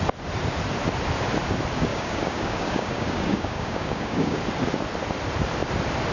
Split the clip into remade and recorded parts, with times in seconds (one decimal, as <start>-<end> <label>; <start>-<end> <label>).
0.0-1.9 recorded; 1.9-4.4 remade; 4.4-6.1 recorded